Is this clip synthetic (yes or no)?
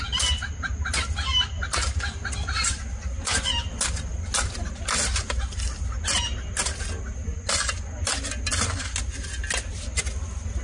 no